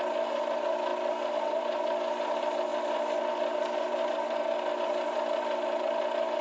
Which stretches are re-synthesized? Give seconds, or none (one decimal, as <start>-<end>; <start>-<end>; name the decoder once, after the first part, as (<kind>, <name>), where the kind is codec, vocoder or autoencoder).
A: none